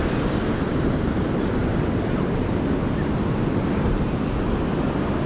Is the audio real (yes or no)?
yes